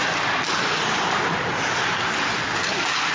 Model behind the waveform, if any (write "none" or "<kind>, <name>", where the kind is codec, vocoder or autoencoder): none